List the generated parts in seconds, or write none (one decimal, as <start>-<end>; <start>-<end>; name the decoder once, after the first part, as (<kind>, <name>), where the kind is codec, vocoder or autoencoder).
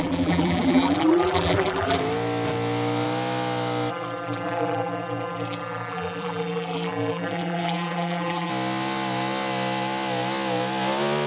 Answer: 0.0-2.0 (vocoder, BigVGAN v2); 3.9-8.5